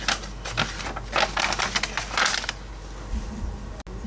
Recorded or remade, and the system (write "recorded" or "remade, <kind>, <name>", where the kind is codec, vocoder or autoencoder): recorded